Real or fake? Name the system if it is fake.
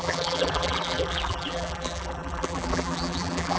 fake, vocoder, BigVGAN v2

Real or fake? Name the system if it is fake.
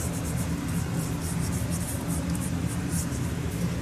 real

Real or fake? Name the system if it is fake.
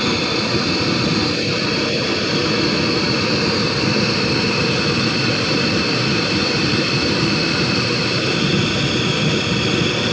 fake, vocoder, BigVGAN v2